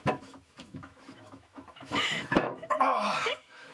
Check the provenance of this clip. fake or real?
fake